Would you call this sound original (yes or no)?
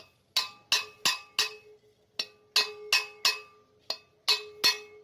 yes